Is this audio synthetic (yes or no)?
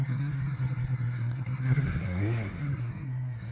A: yes